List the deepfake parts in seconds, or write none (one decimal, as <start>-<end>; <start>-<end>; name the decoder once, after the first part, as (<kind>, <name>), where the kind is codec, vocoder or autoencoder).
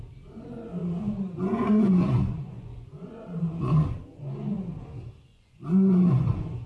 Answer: 0.8-4.6 (vocoder, Vocos); 5.3-6.7